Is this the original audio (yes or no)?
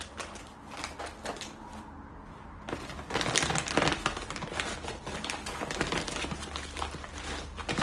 yes